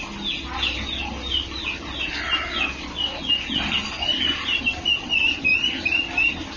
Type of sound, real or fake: real